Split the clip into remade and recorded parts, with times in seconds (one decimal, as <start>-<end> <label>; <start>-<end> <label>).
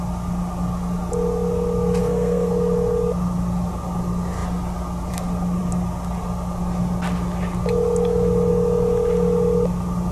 0.0-2.0 recorded; 2.0-2.5 remade; 2.5-10.1 recorded